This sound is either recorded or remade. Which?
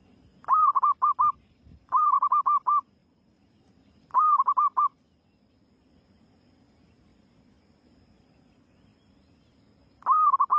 recorded